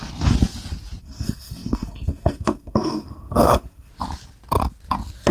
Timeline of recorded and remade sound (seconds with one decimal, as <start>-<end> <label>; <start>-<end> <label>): 0.0-1.0 recorded; 1.0-3.9 remade; 3.9-5.3 recorded